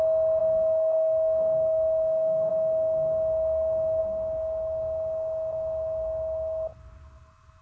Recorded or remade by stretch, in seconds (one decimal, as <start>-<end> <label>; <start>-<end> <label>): 0.0-0.4 recorded; 0.4-2.5 remade; 2.5-7.6 recorded